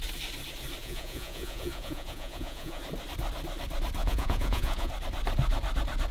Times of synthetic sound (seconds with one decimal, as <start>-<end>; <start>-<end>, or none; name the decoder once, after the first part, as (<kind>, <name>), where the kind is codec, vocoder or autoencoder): 0.8-2.8 (vocoder, Vocos); 4.0-4.9